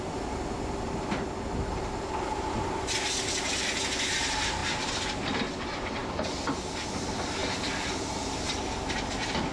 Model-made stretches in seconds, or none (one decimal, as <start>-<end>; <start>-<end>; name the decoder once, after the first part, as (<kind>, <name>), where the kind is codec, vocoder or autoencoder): none